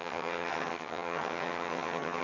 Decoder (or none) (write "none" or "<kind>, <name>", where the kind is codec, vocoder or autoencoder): vocoder, HiFi-GAN